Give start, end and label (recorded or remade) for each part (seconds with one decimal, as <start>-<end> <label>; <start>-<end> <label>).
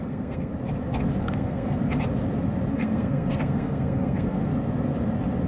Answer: 0.0-0.5 remade; 0.5-1.2 recorded; 1.2-1.8 remade; 1.8-2.7 recorded; 2.7-4.5 remade; 4.5-5.5 recorded